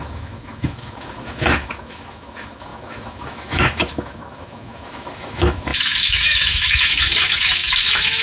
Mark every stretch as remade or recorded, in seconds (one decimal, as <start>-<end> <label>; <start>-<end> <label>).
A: 0.0-8.2 remade